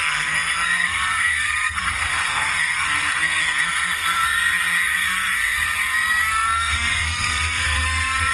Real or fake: fake